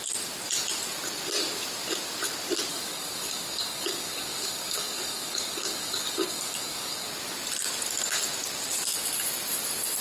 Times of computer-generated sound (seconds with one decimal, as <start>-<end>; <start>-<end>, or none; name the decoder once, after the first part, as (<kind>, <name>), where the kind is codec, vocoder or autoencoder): 2.7-7.1 (codec, DAC)